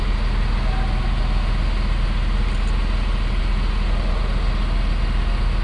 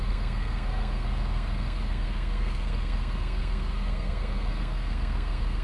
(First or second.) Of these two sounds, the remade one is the second